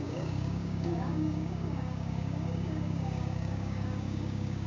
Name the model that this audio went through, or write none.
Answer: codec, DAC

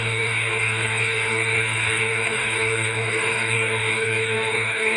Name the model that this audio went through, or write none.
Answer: codec, DAC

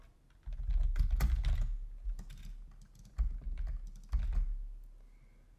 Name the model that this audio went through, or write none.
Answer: none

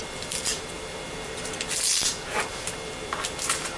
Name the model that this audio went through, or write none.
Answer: none